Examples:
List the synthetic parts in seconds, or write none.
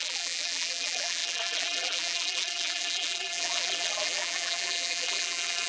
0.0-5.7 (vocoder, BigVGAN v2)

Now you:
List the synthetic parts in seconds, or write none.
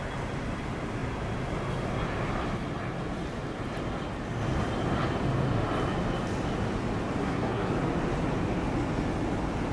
7.2-7.7 (codec, SNAC)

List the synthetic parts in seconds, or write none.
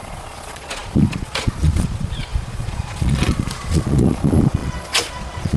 0.0-5.6 (vocoder, Vocos)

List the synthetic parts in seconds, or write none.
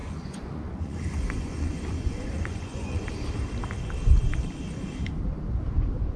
0.0-3.1 (vocoder, Vocos)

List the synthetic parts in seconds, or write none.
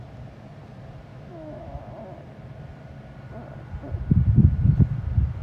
1.1-1.9 (autoencoder, DAC-VAE)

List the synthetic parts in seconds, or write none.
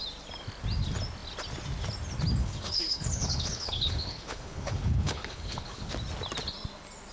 2.4-5.9 (codec, HILCodec)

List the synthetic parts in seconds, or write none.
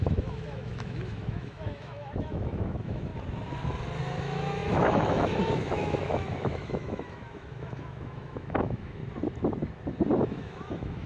0.0-3.1 (autoencoder, DAC-VAE); 4.0-9.0; 10.2-11.1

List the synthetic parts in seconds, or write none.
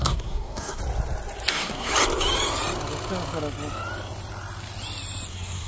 0.0-0.8 (codec, SNAC); 1.5-1.9; 5.3-5.7